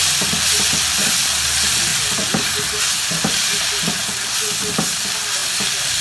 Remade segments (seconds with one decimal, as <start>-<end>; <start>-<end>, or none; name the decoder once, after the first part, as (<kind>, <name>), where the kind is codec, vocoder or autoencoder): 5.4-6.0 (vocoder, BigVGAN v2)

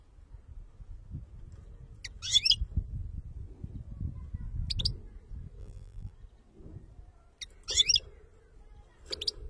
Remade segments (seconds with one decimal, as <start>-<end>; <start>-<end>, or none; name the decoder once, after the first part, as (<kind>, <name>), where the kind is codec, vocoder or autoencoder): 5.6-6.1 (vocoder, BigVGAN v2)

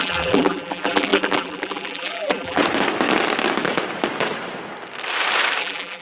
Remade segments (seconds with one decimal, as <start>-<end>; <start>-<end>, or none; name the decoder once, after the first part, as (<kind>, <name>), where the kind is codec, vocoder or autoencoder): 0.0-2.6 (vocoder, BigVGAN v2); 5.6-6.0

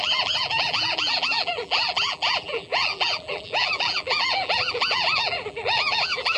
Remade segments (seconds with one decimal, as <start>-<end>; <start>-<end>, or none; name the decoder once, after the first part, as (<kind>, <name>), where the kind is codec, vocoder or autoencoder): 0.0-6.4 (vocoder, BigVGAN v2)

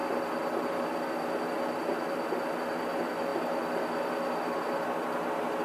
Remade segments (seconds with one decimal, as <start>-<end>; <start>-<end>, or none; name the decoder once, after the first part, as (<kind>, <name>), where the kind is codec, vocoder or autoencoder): 0.0-1.1 (vocoder, BigVGAN v2)

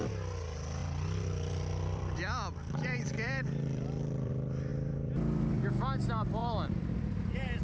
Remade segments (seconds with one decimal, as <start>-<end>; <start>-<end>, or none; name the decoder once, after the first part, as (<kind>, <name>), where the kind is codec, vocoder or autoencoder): 0.8-4.3 (vocoder, BigVGAN v2); 4.7-5.6; 6.4-7.1

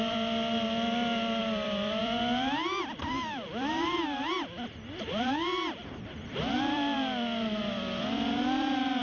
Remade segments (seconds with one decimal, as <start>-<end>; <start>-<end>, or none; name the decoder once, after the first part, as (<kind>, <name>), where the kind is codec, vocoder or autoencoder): 0.0-9.0 (vocoder, BigVGAN v2)